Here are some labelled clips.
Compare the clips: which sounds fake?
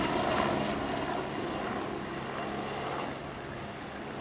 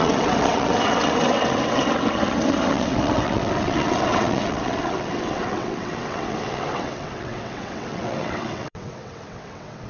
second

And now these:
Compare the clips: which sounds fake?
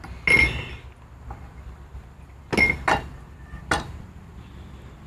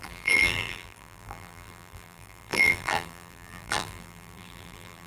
second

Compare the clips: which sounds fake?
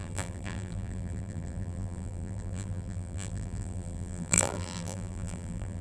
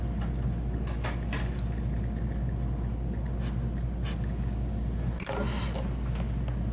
first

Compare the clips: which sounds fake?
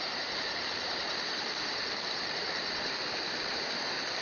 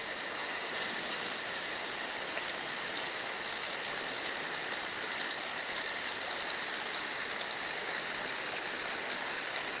first